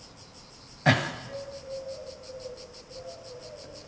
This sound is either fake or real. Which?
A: real